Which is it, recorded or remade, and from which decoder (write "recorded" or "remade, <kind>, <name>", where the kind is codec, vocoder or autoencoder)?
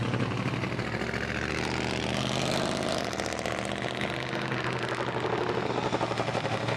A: recorded